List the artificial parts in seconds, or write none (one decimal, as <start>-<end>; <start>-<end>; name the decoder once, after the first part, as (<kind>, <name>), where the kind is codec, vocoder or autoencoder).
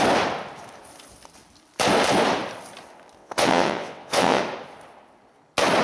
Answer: 3.2-4.4 (vocoder, WaveNeXt)